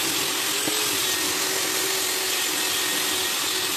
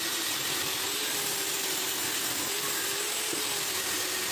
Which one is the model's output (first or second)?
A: second